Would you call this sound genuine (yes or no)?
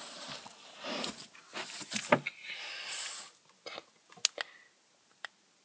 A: yes